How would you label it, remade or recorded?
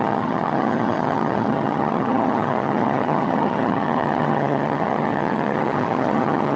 remade